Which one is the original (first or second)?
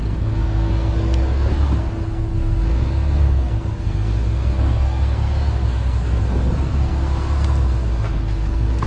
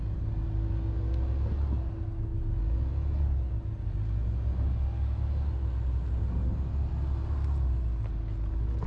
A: second